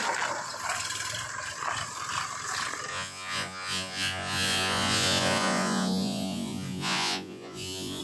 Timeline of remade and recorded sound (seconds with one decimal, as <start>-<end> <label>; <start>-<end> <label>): 0.0-2.9 recorded; 2.9-8.0 remade